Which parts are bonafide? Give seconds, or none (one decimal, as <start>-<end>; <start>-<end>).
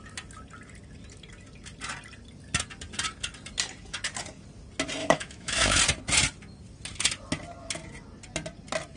0.0-5.0; 5.8-9.0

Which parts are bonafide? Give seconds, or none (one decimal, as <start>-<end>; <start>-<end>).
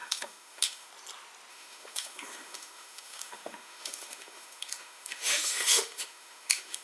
0.9-1.5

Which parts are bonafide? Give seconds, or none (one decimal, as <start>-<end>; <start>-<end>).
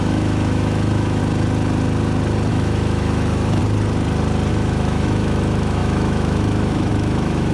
1.2-2.5; 3.6-4.5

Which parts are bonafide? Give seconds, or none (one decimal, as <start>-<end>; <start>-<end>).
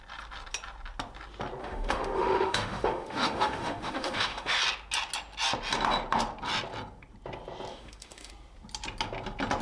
0.0-1.6; 4.6-7.7; 8.3-9.6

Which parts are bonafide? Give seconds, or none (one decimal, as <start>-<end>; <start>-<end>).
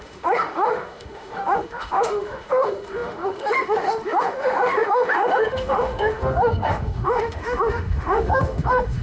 none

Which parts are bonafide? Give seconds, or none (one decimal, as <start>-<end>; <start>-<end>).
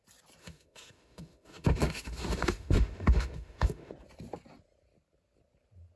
0.0-0.4; 3.9-6.0